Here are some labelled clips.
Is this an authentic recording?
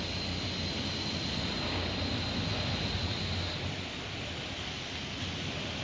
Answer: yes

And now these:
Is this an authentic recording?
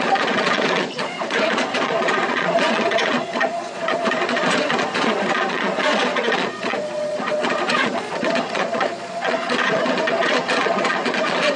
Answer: no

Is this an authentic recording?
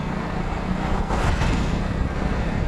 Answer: no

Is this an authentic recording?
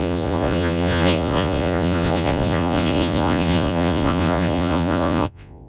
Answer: no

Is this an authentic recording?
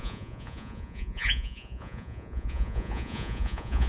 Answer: no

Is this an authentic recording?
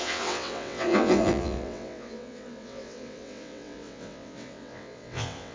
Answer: no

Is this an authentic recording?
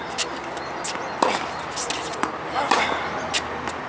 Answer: yes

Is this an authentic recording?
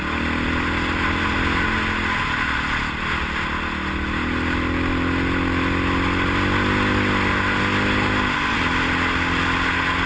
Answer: yes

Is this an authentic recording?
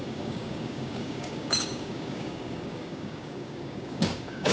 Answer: no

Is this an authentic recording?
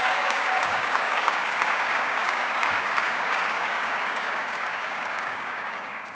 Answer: no